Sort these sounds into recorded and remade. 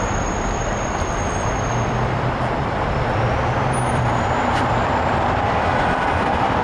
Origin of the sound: remade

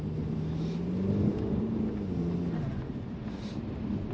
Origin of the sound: recorded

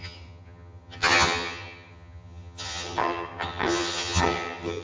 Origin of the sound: remade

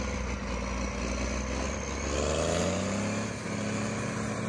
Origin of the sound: recorded